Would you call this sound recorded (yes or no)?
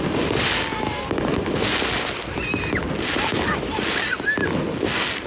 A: yes